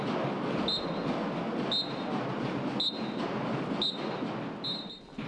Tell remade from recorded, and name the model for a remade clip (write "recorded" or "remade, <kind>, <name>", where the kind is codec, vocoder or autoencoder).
recorded